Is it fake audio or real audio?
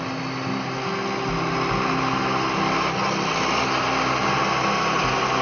real